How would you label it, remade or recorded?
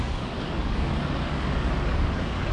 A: remade